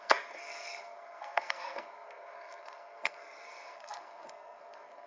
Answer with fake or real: fake